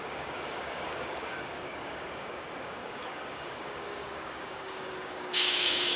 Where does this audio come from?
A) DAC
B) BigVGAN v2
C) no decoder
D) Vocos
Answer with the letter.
A